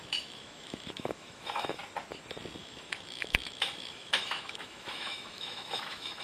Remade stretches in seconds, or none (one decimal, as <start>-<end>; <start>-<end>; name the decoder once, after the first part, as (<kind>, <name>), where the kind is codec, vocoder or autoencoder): 0.0-1.8 (autoencoder, DAC-VAE); 2.6-6.2